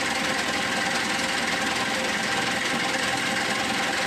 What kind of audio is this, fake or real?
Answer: real